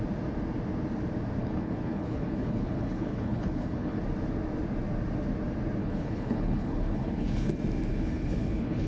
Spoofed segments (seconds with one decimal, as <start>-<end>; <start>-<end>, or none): 1.4-4.0; 5.8-7.5; 7.9-8.9